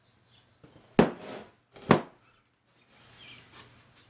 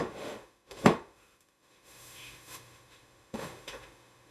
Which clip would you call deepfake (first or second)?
second